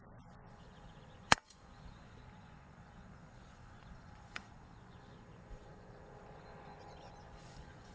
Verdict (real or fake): fake